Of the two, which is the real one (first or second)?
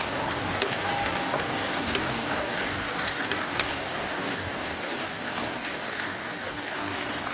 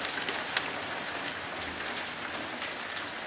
second